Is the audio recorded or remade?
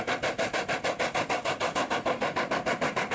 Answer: recorded